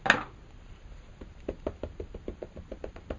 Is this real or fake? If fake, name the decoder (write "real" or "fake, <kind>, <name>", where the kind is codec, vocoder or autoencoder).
real